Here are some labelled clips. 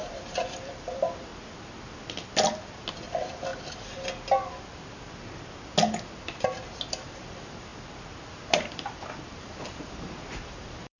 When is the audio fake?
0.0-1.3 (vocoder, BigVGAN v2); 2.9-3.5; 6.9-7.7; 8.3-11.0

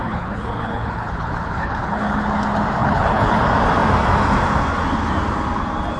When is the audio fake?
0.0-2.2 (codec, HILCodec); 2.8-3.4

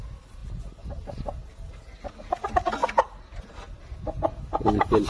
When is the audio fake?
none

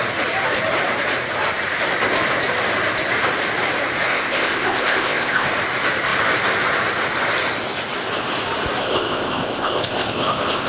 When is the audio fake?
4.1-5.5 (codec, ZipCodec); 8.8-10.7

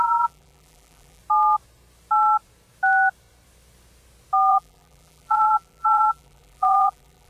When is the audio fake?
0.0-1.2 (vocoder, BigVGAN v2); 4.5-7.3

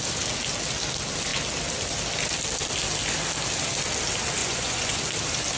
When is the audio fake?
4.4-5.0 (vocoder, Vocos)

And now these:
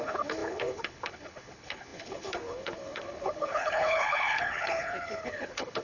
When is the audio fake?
0.0-5.8 (codec, HILCodec)